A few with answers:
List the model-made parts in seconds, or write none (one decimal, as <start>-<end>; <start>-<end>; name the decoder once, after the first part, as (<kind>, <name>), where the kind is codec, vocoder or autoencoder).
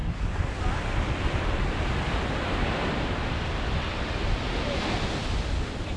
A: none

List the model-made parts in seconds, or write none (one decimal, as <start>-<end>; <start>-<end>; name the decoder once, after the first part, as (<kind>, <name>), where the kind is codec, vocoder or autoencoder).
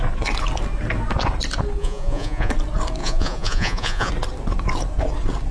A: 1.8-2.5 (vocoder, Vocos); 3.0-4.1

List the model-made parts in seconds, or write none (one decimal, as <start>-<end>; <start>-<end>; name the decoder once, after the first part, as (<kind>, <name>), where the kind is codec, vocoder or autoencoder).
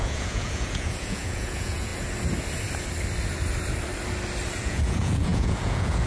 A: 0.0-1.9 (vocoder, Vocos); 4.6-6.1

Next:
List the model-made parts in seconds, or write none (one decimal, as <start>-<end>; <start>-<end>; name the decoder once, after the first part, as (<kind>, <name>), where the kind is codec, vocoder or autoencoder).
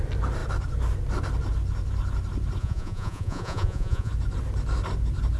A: 2.6-4.1 (vocoder, Vocos)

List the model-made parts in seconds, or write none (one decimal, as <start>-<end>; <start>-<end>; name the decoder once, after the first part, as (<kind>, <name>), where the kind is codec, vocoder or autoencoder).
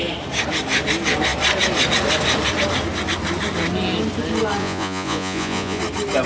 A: 4.6-5.8 (vocoder, Vocos)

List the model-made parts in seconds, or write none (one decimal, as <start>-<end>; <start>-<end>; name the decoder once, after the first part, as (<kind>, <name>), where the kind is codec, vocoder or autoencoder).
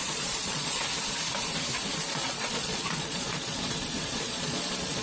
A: 0.0-0.8 (vocoder, Vocos); 2.1-5.0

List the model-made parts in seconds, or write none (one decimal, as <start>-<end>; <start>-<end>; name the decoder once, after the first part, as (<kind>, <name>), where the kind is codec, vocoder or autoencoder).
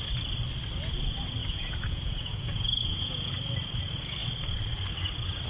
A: 1.4-3.3 (vocoder, Vocos)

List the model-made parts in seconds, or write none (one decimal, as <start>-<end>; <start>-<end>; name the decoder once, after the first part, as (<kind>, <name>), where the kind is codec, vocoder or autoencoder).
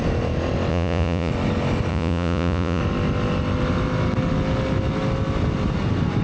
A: 0.7-1.3 (vocoder, Vocos); 1.9-2.8